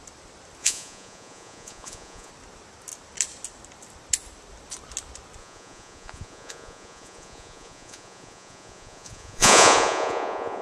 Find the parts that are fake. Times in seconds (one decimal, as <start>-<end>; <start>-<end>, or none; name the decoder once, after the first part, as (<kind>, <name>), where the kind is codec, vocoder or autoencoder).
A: 0.6-2.3 (vocoder, Vocos); 5.4-10.6